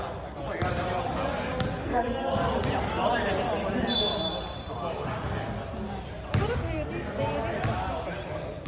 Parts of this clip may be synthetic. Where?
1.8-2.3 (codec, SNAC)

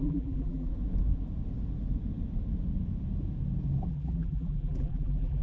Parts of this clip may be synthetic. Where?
0.0-0.7 (vocoder, BigVGAN v2); 3.9-5.4

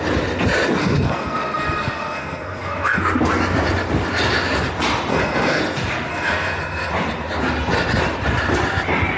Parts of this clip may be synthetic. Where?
0.8-3.0 (codec, SNAC); 5.1-5.6; 6.1-6.9

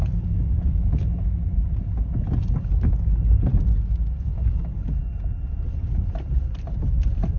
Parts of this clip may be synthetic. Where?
none

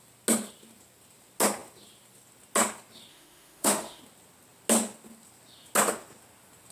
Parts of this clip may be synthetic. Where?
3.1-4.0 (autoencoder, DAC-VAE)